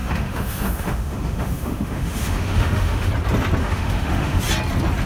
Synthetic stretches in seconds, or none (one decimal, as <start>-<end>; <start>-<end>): 0.0-3.1; 3.6-4.4